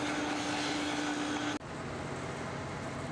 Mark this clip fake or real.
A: real